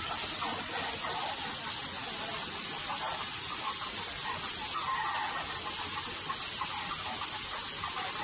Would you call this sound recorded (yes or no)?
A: yes